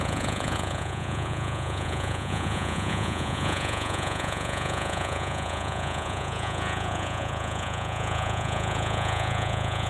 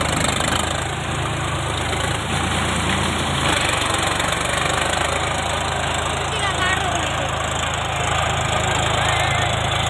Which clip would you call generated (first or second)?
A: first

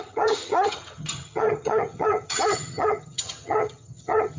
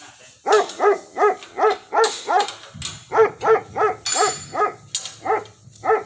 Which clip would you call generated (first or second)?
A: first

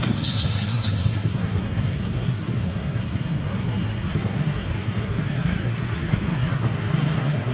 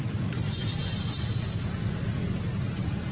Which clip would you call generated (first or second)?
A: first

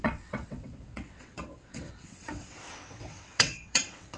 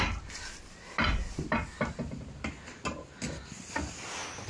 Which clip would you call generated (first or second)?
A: first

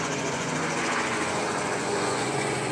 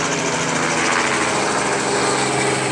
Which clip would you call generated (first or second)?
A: first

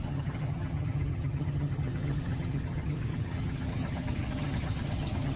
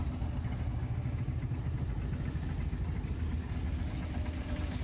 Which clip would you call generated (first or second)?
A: first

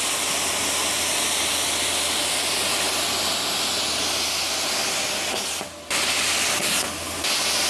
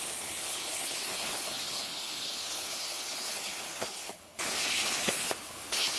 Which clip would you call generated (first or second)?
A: second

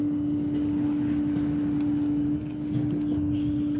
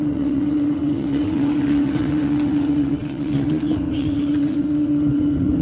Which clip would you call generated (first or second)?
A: second